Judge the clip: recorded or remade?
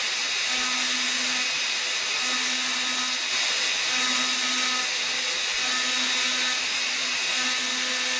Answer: recorded